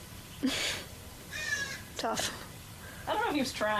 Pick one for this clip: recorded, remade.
remade